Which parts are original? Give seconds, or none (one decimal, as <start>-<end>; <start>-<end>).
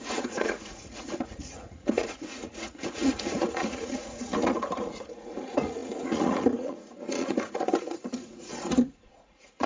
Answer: none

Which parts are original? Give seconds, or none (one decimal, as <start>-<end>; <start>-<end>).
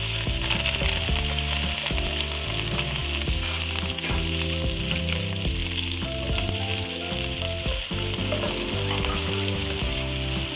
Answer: 0.0-10.6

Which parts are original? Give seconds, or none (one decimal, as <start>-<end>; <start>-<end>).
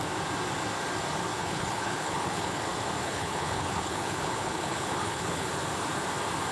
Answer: 0.0-1.3; 2.6-3.0; 5.5-6.5